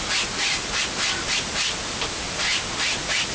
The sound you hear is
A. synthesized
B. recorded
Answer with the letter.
B